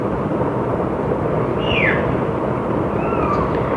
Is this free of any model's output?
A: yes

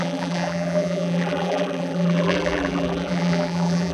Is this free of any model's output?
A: no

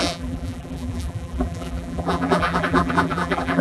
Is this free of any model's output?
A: no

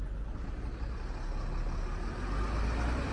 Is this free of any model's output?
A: yes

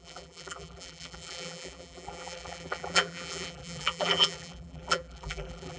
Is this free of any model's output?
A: no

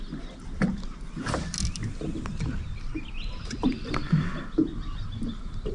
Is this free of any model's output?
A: yes